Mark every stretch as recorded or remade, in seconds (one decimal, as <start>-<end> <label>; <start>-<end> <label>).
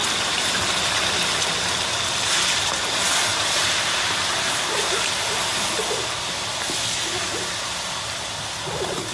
0.0-2.9 remade; 2.9-3.3 recorded; 3.3-6.2 remade; 6.2-9.1 recorded